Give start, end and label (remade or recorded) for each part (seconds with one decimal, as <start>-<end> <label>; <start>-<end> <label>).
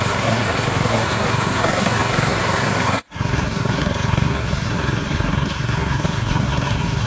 0.0-7.1 remade